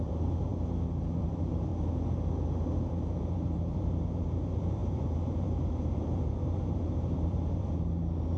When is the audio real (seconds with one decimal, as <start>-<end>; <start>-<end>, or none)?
0.5-1.2; 1.7-2.8